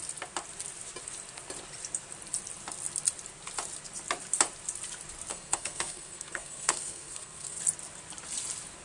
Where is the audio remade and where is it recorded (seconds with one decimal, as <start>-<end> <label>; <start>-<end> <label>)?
0.0-5.3 recorded; 5.3-7.6 remade; 7.6-8.8 recorded